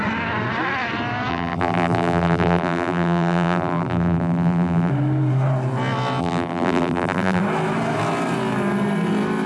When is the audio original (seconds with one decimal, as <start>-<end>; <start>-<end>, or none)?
0.0-1.3; 4.9-6.2; 7.4-9.5